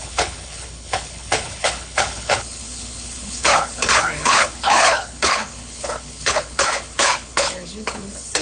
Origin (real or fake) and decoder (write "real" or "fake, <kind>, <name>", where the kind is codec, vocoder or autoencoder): fake, codec, HILCodec